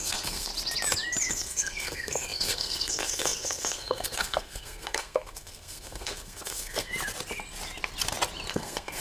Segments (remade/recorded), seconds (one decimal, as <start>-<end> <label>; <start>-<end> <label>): 0.0-0.5 remade; 0.5-1.3 recorded; 1.3-6.9 remade; 6.9-8.5 recorded; 8.5-9.0 remade

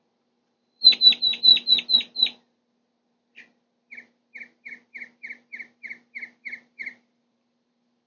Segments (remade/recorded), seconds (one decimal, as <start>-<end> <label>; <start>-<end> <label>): 0.0-1.5 remade; 1.5-6.4 recorded; 6.4-8.1 remade

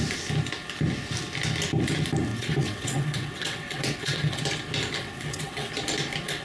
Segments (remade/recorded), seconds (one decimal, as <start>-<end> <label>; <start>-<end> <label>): 0.0-2.3 recorded; 2.3-4.4 remade; 4.4-5.0 recorded; 5.0-5.7 remade; 5.7-6.4 recorded

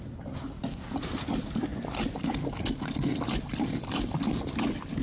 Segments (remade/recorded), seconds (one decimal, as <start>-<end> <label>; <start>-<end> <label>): 0.0-5.0 recorded

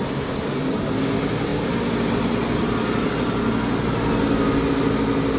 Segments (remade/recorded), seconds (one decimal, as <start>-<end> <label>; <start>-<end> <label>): 0.0-5.4 recorded

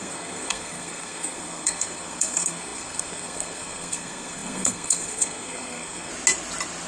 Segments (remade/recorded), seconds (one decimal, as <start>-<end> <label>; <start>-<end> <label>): 0.0-6.1 remade; 6.1-6.9 recorded

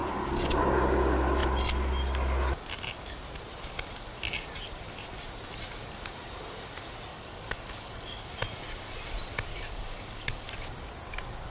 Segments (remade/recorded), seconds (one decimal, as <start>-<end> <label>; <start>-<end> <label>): 0.0-7.1 recorded; 7.1-8.3 remade; 8.3-9.5 recorded; 9.5-10.5 remade; 10.5-11.5 recorded